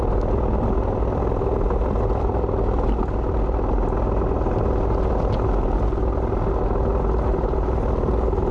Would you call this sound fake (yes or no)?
no